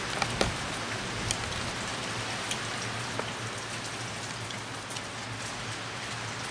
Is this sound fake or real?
real